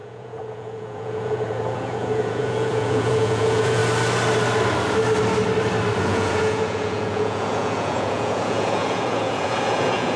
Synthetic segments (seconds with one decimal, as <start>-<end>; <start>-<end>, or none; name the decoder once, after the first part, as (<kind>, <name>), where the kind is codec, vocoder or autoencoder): 0.0-3.8 (vocoder, Vocos); 6.0-10.2